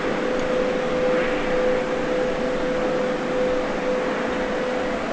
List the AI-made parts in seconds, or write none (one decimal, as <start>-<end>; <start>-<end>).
none